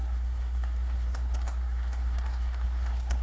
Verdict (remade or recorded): remade